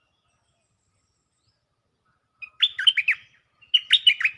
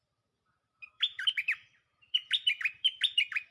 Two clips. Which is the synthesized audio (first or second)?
second